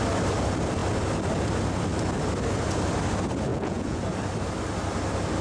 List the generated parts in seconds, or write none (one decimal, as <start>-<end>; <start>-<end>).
3.5-4.0